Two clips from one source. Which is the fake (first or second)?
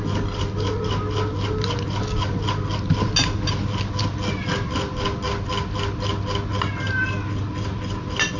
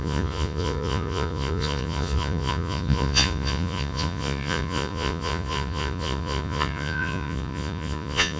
second